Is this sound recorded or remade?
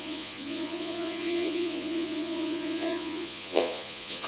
remade